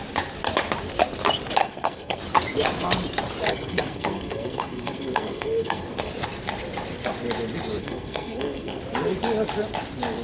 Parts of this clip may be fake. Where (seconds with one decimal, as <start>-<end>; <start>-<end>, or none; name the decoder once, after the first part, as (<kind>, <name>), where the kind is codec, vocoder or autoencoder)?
1.6-2.2 (codec, SNAC); 3.5-6.1; 7.8-8.8